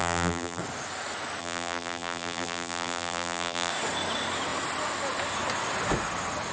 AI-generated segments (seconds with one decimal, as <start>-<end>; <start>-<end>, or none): 0.0-0.6; 1.4-3.7